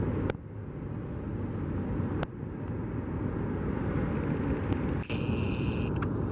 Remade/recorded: recorded